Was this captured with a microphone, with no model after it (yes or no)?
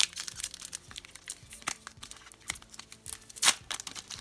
yes